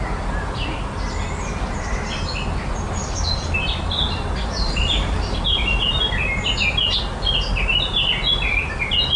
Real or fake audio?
real